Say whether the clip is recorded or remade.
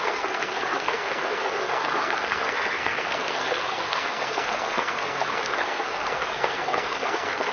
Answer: remade